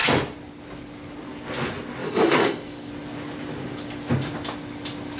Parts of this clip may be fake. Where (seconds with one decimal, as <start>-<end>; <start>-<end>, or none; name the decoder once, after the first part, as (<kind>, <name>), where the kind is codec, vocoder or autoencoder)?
2.0-2.9 (codec, DAC)